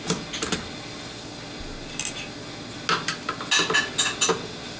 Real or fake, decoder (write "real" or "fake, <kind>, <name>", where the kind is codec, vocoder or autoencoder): real